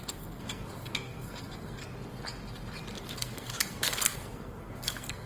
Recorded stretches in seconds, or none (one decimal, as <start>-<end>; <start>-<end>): 1.8-3.0

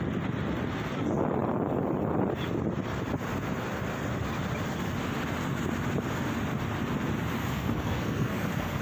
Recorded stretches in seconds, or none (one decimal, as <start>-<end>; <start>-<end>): 0.0-7.4